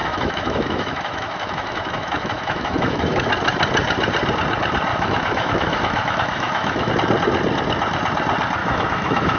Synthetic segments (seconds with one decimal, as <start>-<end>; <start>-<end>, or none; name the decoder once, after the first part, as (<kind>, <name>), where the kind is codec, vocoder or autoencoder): 0.0-3.3 (autoencoder, DAC-VAE); 4.9-6.9; 8.6-9.4